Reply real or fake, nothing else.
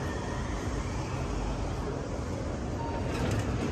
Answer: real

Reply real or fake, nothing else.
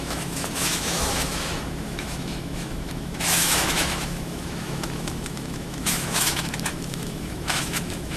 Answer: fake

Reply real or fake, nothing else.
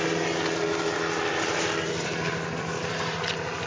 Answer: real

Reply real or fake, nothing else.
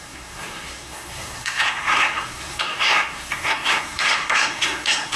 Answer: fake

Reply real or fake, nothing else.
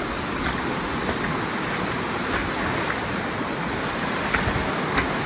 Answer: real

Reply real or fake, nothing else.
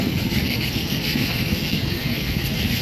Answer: fake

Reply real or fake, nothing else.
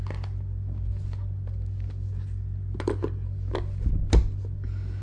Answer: real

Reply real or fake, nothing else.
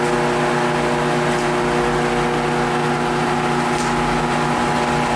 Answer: real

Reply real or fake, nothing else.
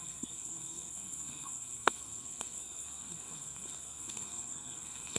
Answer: fake